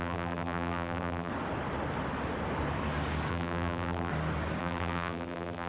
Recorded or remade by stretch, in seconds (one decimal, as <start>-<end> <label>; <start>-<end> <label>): 0.0-1.3 remade; 1.3-3.3 recorded; 3.3-4.1 remade; 4.1-4.6 recorded; 4.6-5.7 remade